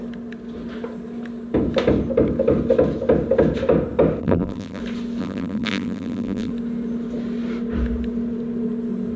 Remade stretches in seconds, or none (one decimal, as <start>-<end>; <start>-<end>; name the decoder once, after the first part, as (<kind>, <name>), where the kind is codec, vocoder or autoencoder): 4.2-4.8 (vocoder, BigVGAN v2); 5.2-6.5